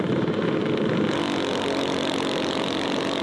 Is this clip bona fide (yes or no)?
yes